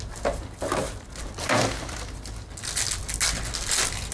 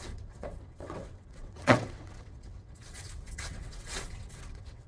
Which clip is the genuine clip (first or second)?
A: first